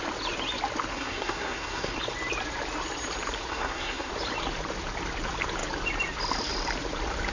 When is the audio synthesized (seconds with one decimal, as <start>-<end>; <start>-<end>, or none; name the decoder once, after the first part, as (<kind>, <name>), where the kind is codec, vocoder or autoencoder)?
0.9-1.9 (codec, SNAC); 3.5-4.1